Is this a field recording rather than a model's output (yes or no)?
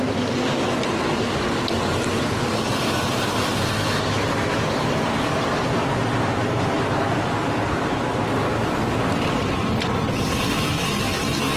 yes